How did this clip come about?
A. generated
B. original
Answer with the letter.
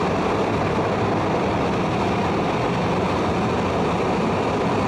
B